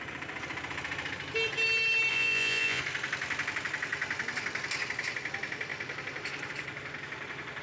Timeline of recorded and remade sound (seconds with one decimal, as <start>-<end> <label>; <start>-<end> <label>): 0.0-2.1 recorded; 2.1-2.8 remade; 2.8-7.6 recorded